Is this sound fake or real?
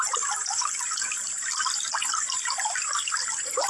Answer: real